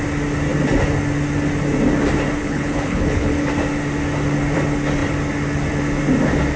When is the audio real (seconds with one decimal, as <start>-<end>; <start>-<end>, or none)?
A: 0.0-2.4; 3.5-6.6